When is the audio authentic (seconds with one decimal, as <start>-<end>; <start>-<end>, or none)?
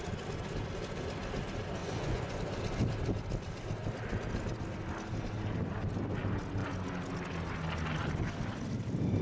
0.0-1.8; 2.4-9.2